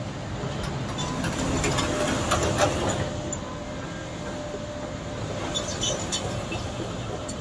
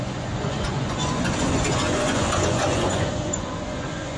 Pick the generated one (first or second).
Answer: second